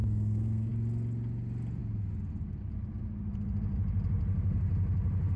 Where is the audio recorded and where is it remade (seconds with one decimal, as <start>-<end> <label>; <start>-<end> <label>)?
0.0-0.7 remade; 0.7-5.4 recorded